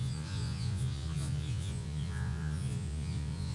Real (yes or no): no